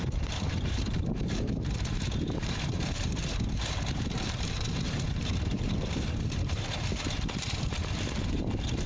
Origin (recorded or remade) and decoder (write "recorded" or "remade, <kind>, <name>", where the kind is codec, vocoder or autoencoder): remade, vocoder, BigVGAN v2